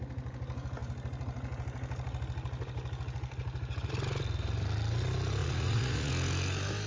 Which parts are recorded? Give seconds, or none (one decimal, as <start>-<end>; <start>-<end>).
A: 0.0-5.4; 6.1-6.9